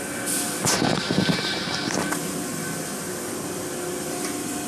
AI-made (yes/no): no